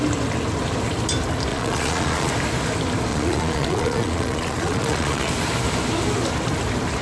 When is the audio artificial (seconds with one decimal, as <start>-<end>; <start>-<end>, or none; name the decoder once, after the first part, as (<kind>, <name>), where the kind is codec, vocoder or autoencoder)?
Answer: 1.5-2.3 (vocoder, Vocos); 3.1-5.3